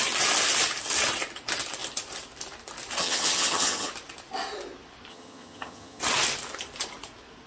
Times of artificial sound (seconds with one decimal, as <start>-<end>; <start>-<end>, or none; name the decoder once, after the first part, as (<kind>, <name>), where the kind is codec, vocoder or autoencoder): 3.0-3.9 (vocoder, HiFi-GAN); 5.1-6.0